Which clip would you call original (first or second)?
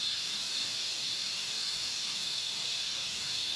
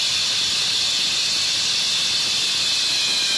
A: second